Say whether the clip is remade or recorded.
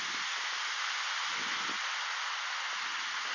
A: recorded